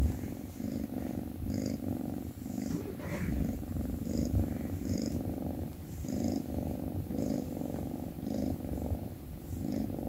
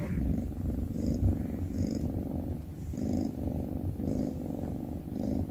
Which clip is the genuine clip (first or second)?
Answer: second